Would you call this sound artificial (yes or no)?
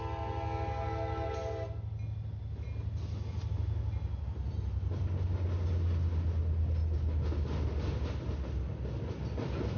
no